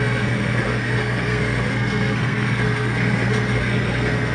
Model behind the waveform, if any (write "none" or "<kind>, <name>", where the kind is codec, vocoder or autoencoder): codec, SNAC